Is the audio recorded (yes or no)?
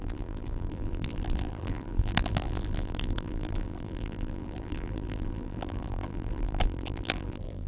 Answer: no